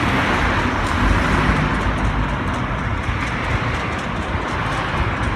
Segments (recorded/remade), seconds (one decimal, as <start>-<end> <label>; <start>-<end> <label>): 0.0-5.4 recorded